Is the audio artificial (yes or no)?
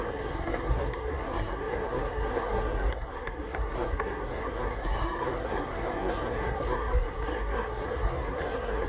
yes